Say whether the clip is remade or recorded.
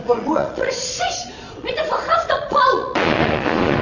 remade